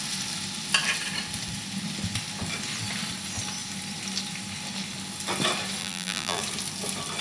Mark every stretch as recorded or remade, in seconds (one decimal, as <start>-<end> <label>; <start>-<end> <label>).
0.0-5.8 recorded; 5.8-6.4 remade; 6.4-7.2 recorded